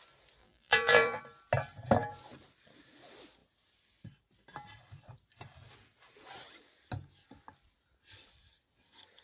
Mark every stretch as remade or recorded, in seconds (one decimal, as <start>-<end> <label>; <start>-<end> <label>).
0.0-0.4 recorded; 0.4-1.2 remade; 1.2-9.2 recorded